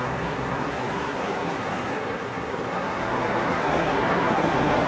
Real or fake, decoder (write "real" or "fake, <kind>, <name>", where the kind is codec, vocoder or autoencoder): fake, codec, SNAC